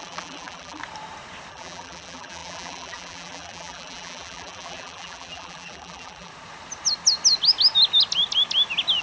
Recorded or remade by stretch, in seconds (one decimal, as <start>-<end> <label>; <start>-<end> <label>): 0.0-0.8 remade; 0.8-1.5 recorded; 1.5-6.3 remade; 6.3-9.0 recorded